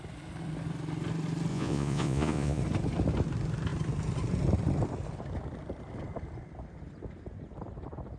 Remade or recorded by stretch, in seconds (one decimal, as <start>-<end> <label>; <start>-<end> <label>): 0.0-1.5 recorded; 1.5-2.6 remade; 2.6-8.2 recorded